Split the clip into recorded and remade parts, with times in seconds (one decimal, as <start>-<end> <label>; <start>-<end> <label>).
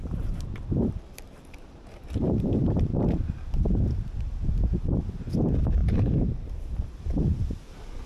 0.0-4.0 remade; 4.0-5.8 recorded; 5.8-7.4 remade; 7.4-8.1 recorded